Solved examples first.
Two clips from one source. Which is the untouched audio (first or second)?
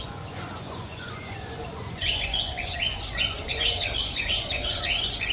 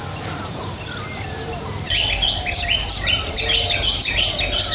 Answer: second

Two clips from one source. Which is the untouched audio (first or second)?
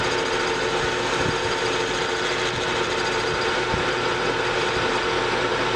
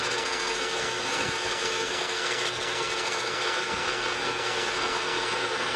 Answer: first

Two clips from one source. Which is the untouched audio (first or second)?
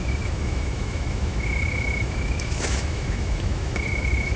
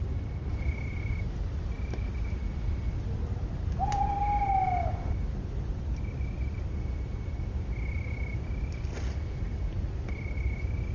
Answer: second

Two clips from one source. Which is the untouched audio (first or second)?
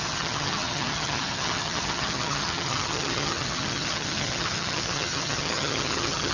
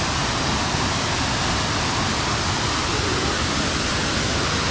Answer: second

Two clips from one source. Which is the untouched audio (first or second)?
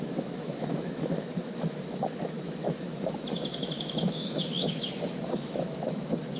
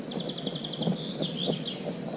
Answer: second